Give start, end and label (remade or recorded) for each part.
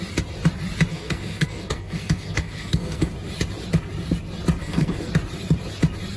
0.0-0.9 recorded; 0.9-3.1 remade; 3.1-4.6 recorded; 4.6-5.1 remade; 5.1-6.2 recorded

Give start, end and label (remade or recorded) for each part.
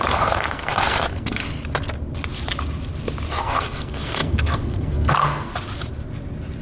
0.0-1.4 remade; 1.4-3.3 recorded; 3.3-5.5 remade; 5.5-6.6 recorded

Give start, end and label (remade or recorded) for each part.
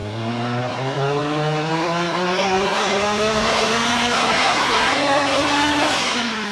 0.0-6.5 remade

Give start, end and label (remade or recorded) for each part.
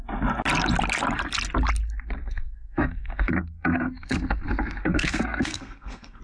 0.0-2.2 recorded; 2.2-6.2 remade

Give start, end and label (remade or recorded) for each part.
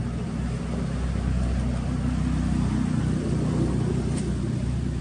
0.0-5.0 recorded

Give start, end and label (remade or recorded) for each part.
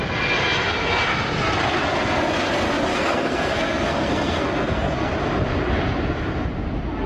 0.0-2.9 recorded; 2.9-5.1 remade; 5.1-7.1 recorded